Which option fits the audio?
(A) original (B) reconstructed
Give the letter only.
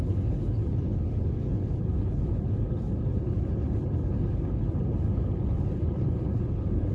B